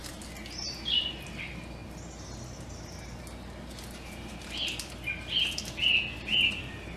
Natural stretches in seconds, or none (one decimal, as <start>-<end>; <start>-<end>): 0.0-7.0